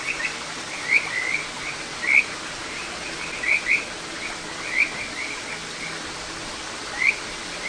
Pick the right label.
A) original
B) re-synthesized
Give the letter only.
A